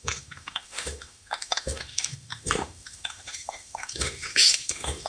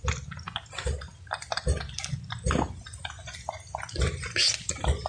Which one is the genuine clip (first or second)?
second